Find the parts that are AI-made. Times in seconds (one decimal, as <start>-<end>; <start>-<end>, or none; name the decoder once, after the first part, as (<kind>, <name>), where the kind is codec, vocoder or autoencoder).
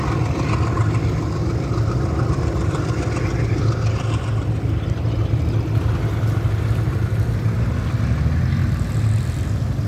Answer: none